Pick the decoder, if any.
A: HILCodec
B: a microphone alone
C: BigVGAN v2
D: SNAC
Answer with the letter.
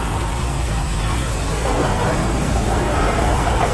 D